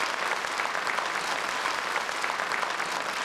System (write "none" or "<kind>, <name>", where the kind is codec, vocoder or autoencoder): none